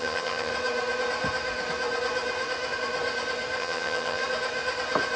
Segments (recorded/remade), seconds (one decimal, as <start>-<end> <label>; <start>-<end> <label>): 0.0-0.5 remade; 0.5-3.6 recorded; 3.6-4.2 remade; 4.2-5.2 recorded